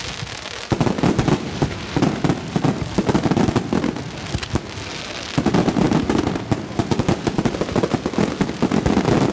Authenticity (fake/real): real